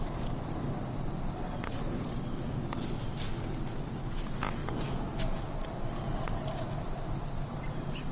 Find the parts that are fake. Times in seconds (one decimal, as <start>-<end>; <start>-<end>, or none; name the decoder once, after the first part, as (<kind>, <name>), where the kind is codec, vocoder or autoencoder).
none